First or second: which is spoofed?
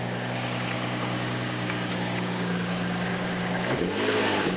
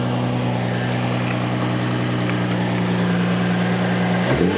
first